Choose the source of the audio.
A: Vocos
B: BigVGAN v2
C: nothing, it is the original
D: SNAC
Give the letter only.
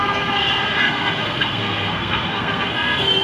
D